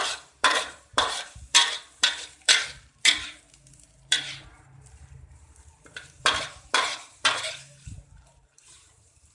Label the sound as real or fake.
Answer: fake